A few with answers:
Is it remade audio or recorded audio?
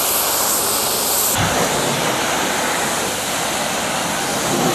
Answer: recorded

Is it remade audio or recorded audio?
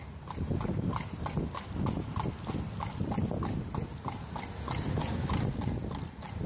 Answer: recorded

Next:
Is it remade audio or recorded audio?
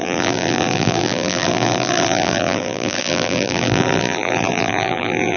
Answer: remade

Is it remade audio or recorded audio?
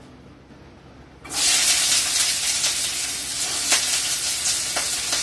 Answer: recorded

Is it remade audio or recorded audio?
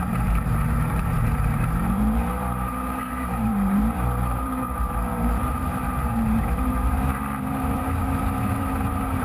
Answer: remade